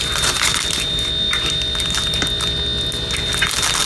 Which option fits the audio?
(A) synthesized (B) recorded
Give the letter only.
B